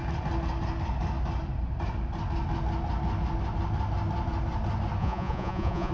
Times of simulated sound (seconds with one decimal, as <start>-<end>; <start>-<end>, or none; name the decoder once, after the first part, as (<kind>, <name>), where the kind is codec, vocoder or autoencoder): 5.0-5.9 (vocoder, Vocos)